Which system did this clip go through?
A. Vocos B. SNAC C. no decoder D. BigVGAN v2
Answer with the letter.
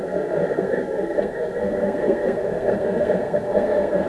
B